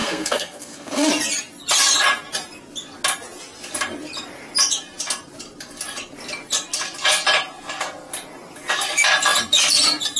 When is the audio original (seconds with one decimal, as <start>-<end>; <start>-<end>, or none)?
1.1-10.2